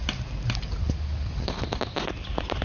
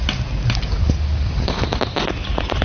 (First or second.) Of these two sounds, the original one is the second